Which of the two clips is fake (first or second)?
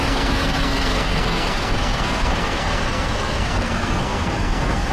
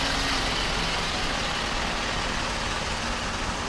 first